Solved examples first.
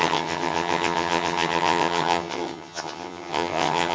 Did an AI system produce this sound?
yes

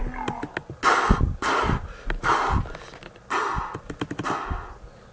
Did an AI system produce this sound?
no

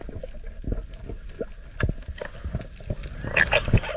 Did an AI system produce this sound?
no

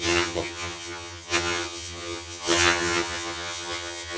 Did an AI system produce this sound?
yes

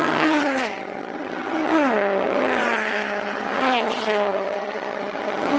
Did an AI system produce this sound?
yes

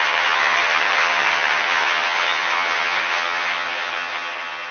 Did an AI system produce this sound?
yes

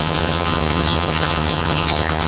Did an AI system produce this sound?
yes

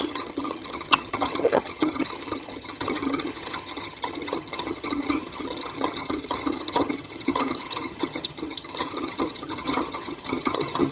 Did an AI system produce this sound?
yes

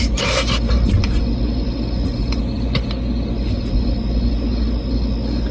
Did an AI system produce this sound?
no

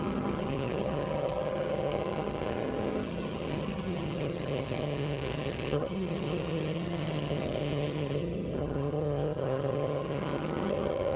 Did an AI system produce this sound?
yes